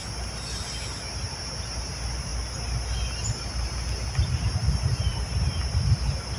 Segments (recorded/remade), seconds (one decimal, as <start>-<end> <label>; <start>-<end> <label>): 0.0-6.4 recorded